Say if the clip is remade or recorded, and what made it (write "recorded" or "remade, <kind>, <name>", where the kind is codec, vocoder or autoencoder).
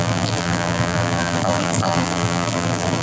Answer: remade, vocoder, BigVGAN v2